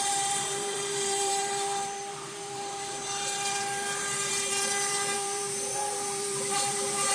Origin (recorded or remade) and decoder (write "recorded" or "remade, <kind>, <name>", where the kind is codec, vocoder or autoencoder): remade, vocoder, BigVGAN v2